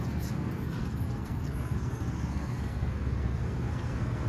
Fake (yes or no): yes